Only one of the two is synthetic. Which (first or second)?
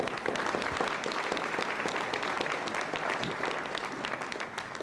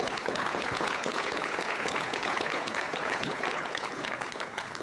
second